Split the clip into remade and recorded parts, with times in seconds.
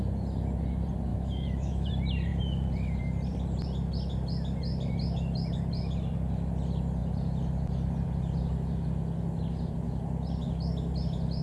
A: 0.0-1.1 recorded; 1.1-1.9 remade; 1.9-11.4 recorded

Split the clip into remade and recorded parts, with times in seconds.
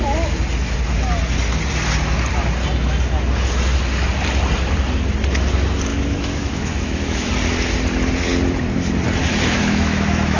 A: 0.0-5.9 recorded; 5.9-7.3 remade; 7.3-9.2 recorded; 9.2-10.4 remade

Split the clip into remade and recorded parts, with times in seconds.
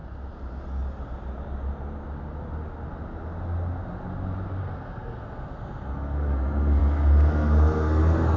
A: 0.0-4.6 recorded; 4.6-8.4 remade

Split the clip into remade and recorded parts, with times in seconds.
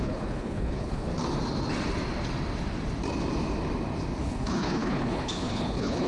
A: 0.0-1.1 remade; 1.1-4.2 recorded; 4.2-6.1 remade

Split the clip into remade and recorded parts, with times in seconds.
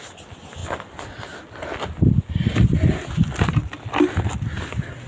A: 0.0-5.1 recorded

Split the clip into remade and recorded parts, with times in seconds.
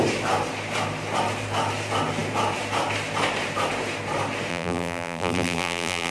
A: 0.0-4.5 recorded; 4.5-6.1 remade